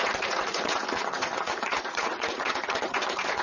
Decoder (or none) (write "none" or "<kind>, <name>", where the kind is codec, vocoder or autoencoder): vocoder, Vocos